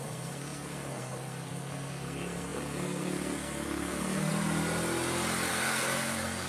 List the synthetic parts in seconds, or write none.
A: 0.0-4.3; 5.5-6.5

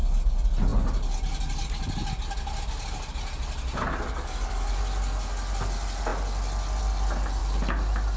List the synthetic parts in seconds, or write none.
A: none

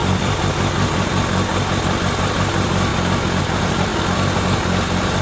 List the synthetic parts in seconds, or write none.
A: 0.0-0.5

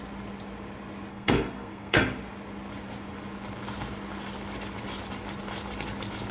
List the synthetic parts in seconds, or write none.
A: 1.1-2.0

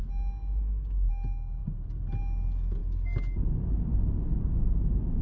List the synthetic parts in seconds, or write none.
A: 1.6-2.2

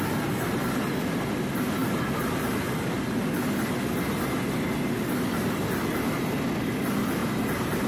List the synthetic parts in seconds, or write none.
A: none

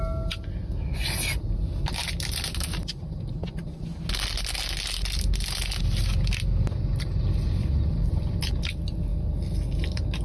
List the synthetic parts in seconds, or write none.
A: none

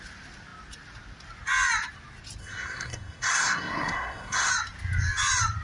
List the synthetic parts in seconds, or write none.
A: 2.4-4.5